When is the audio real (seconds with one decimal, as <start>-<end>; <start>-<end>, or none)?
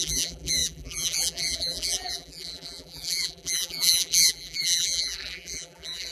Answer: none